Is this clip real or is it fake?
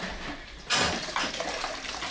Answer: real